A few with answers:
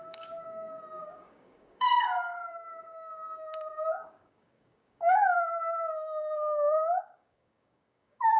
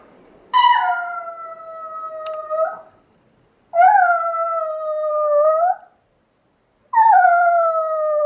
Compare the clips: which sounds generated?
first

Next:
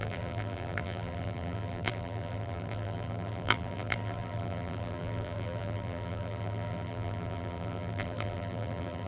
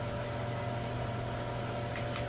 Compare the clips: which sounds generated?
first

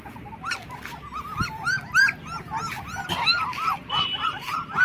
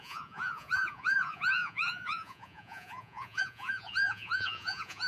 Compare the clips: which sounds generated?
second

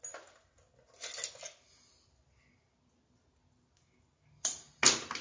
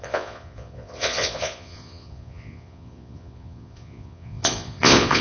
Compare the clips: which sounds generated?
second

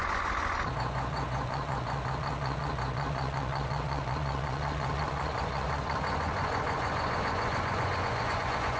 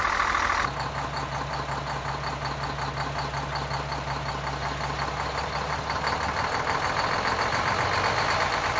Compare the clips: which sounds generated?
first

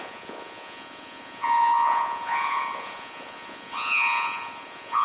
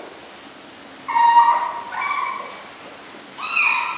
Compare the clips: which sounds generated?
first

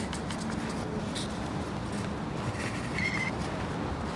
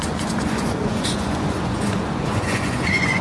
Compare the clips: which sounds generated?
second